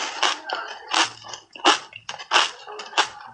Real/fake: real